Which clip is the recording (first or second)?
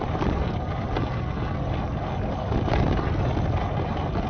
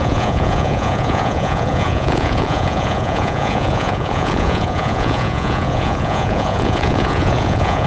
first